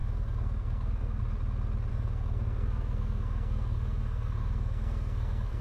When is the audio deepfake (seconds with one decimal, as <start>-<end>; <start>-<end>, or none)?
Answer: 0.0-1.2; 1.9-5.6